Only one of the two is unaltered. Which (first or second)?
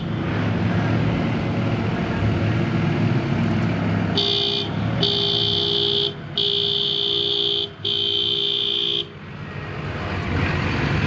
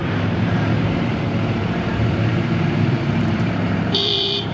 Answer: first